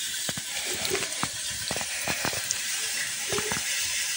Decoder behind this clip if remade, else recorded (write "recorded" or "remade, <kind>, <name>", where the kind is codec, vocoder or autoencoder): remade, vocoder, BigVGAN v2